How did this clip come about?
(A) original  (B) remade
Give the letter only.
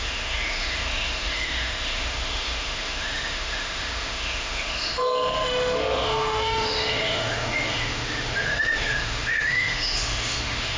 B